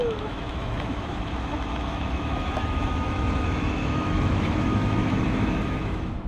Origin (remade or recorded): remade